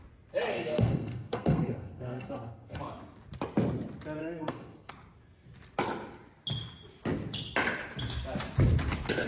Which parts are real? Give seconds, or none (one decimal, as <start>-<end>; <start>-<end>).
0.0-0.5; 2.8-4.2; 4.9-9.3